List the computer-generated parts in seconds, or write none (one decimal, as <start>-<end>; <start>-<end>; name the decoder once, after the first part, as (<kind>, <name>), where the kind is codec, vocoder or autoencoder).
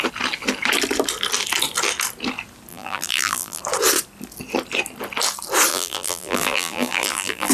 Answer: 2.7-3.6 (vocoder, BigVGAN v2); 5.7-7.5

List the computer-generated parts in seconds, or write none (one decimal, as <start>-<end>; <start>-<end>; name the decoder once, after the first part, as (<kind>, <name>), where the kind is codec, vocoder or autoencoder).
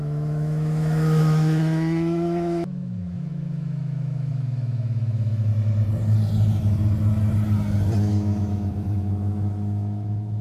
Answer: 0.0-5.5 (autoencoder, DAC-VAE); 8.1-10.4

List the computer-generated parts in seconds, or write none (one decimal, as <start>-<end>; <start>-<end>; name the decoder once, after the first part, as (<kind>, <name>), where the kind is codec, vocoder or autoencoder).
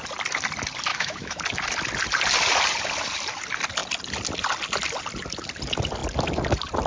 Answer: 0.9-1.4 (autoencoder, DAC-VAE)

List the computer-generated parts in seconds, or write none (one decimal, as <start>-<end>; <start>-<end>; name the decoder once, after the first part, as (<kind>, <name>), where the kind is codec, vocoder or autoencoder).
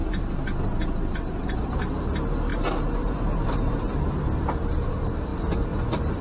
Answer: 0.0-1.8 (vocoder, BigVGAN v2); 2.5-4.2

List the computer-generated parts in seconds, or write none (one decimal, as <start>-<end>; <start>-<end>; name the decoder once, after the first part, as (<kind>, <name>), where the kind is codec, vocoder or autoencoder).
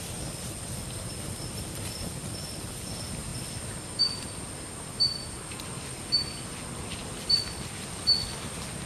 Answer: none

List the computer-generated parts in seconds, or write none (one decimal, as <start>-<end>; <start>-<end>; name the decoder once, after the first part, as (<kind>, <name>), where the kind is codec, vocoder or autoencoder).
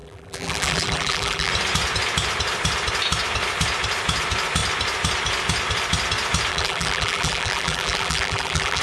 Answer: 0.0-1.5 (vocoder, BigVGAN v2); 6.5-8.8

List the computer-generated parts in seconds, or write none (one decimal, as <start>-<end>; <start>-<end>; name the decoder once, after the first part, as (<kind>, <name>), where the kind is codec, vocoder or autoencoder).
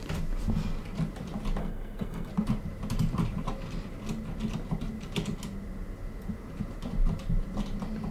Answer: 1.6-2.3 (codec, SNAC)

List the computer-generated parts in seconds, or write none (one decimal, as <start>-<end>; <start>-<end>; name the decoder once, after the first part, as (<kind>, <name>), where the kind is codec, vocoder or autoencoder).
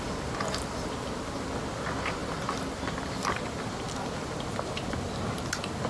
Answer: none